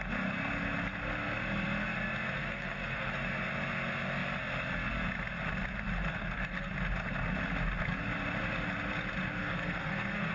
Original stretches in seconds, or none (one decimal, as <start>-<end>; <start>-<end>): 0.0-2.4; 3.1-6.1; 6.7-9.4